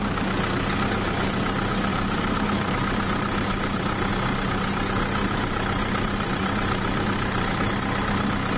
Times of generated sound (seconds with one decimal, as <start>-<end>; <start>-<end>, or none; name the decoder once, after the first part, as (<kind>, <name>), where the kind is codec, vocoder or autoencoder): 1.9-4.1 (vocoder, BigVGAN v2); 5.2-7.7